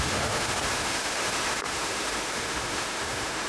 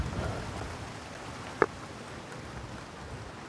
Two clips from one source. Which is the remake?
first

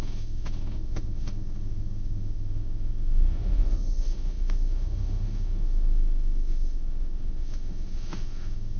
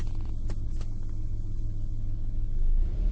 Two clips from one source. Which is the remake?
first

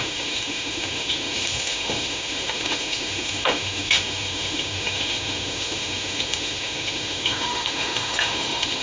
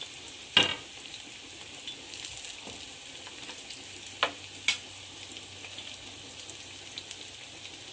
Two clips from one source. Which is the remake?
first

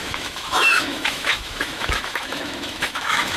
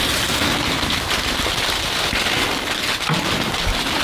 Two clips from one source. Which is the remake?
first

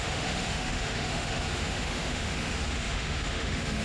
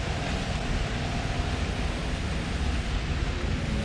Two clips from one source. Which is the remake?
first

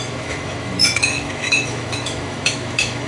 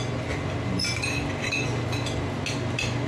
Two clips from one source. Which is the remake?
first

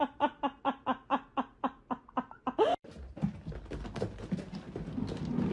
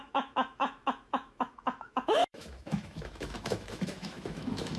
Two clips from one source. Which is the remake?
second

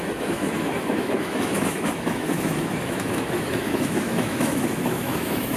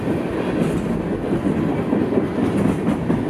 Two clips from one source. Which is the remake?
first